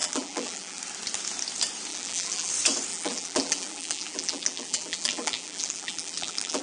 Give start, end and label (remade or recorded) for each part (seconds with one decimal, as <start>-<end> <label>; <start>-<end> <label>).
0.0-0.8 remade; 0.8-1.9 recorded; 1.9-2.5 remade; 2.5-2.9 recorded; 2.9-6.6 remade